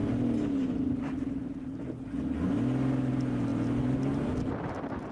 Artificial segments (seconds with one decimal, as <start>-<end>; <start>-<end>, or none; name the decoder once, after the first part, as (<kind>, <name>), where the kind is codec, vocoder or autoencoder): none